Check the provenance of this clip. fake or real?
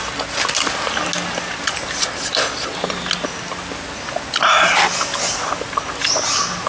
real